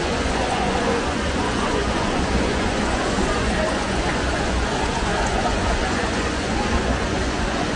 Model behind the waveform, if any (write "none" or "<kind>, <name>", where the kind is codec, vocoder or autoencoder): vocoder, Vocos